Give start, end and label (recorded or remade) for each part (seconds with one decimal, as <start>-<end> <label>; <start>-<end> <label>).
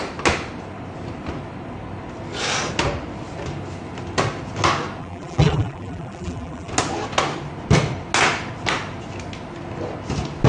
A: 0.0-5.0 recorded; 5.0-6.7 remade; 6.7-10.5 recorded